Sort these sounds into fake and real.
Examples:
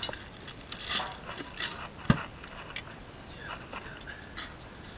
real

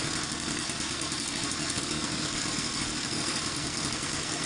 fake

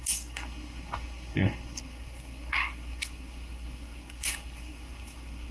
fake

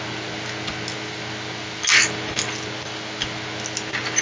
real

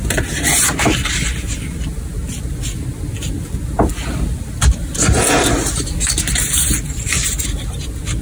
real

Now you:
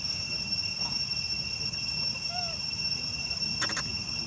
real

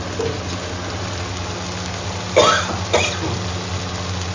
real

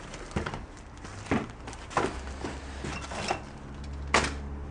real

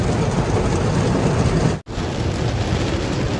real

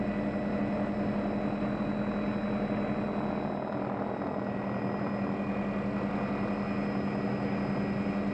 real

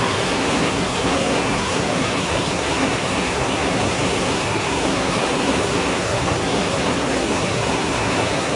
fake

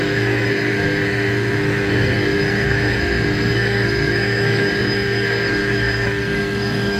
fake